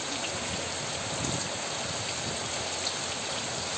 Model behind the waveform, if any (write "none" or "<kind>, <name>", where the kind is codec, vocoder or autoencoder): none